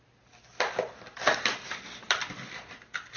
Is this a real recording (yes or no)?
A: yes